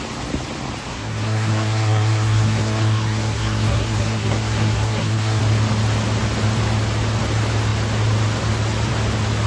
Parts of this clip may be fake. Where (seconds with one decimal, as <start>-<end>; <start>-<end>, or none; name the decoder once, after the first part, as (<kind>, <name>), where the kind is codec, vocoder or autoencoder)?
0.9-5.4 (codec, SNAC)